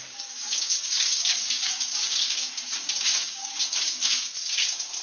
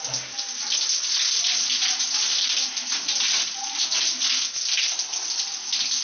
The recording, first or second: second